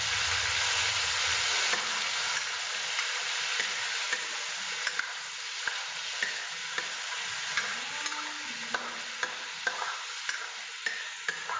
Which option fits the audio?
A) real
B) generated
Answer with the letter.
A